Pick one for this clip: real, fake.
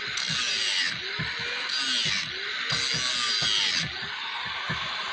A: real